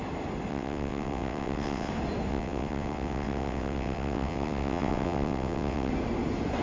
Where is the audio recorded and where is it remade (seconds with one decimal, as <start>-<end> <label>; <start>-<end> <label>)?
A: 0.0-0.5 recorded; 0.5-1.9 remade; 1.9-2.3 recorded; 2.3-5.9 remade; 5.9-6.6 recorded